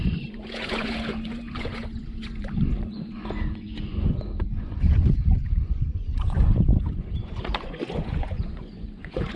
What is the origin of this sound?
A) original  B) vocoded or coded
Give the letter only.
B